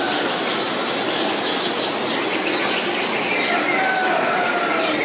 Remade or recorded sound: recorded